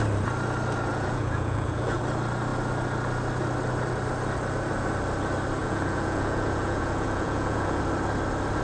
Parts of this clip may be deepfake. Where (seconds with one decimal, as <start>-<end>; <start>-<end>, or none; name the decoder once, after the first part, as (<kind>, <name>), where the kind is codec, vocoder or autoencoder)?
0.9-2.0 (vocoder, Vocos); 5.6-7.8